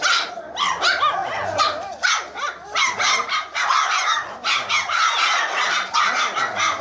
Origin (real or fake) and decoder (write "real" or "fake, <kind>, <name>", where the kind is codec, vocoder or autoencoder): real